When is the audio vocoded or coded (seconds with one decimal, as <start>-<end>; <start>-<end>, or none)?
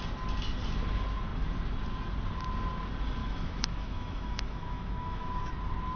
3.2-5.5